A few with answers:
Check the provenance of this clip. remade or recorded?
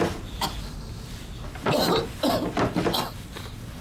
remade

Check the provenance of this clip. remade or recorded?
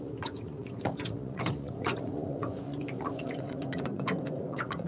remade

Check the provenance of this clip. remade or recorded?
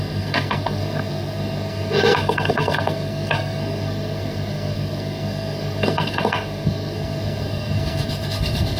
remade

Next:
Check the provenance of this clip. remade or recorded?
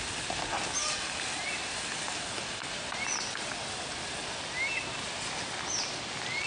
recorded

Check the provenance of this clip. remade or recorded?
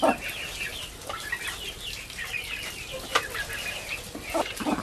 recorded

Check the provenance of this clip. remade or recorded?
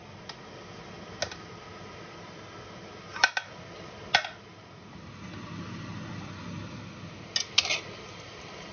recorded